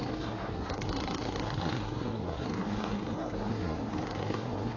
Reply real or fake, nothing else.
fake